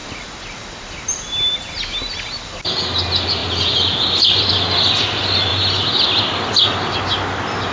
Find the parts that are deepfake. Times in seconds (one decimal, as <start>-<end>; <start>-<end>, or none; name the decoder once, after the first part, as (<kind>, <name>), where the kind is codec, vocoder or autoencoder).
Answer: none